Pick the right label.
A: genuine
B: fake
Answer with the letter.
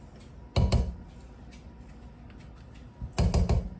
A